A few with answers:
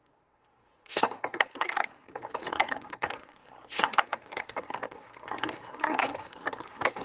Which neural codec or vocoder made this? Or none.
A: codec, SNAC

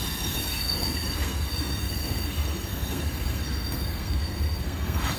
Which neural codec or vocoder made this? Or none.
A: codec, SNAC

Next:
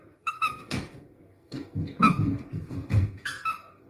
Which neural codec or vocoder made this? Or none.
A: codec, SNAC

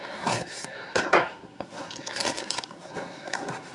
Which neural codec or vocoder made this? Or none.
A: codec, SNAC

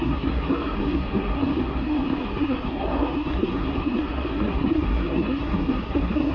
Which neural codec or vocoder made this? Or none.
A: codec, SNAC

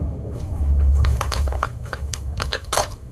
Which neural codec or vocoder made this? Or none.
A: codec, SNAC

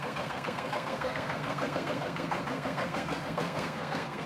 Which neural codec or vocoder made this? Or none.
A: codec, SNAC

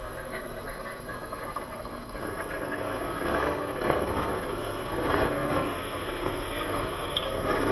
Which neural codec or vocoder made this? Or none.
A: codec, SNAC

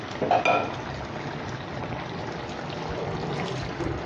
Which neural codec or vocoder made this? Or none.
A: none